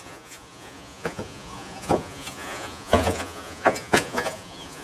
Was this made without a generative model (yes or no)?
no